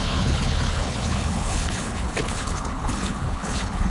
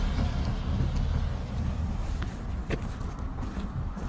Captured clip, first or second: second